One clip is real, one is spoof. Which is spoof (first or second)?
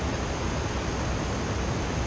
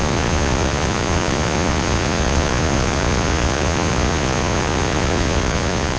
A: second